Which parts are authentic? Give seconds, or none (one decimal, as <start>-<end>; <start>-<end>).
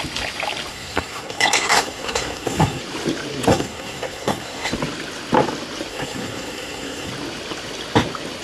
0.0-0.7; 2.8-3.5; 4.7-5.9; 7.1-8.4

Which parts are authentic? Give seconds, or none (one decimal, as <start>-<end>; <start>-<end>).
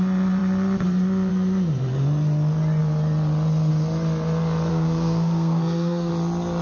0.0-4.7; 6.1-6.6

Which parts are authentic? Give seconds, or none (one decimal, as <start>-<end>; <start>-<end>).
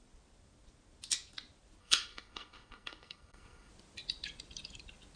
0.0-1.8; 3.7-5.2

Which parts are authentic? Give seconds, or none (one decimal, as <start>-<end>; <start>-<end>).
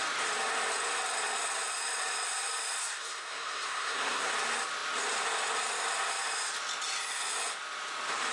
0.0-2.8; 4.3-8.3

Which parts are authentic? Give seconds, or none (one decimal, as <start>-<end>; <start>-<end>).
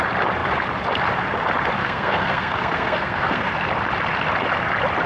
0.0-1.8; 3.5-5.1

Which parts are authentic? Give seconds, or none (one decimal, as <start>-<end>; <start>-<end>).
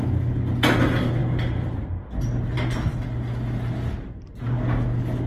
0.0-5.3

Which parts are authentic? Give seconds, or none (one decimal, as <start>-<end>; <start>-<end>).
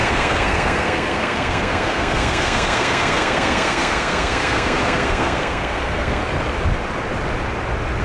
6.2-8.0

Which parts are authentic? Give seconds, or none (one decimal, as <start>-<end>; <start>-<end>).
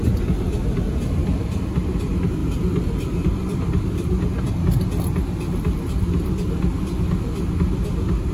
0.0-8.3